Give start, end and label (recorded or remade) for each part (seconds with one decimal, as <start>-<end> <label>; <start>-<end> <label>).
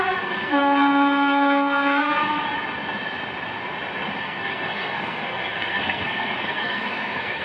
0.0-2.4 remade; 2.4-4.2 recorded; 4.2-7.4 remade